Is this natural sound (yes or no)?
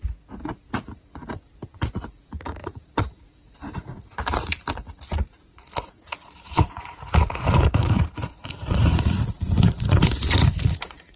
no